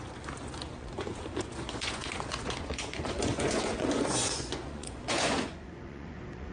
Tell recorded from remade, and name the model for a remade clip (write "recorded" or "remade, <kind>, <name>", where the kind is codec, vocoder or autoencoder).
remade, vocoder, Vocos